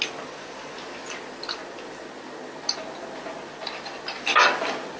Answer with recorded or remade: recorded